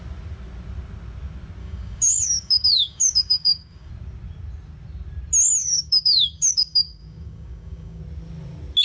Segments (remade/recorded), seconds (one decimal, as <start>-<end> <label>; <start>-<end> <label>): 0.0-1.6 recorded; 1.6-3.9 remade; 3.9-5.6 recorded; 5.6-8.0 remade; 8.0-8.8 recorded